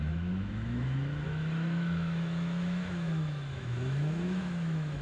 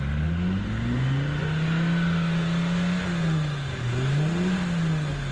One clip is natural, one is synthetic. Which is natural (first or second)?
second